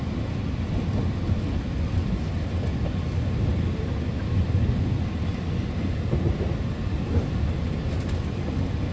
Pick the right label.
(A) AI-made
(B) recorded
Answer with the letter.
B